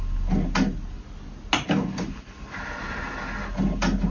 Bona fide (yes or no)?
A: yes